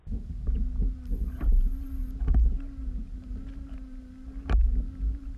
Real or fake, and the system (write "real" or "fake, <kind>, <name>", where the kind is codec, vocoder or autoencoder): real